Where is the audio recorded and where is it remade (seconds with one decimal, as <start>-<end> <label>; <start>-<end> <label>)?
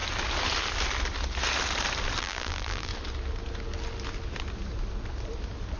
0.0-2.2 recorded; 2.2-2.9 remade; 2.9-5.8 recorded